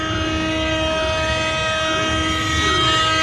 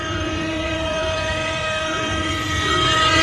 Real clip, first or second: first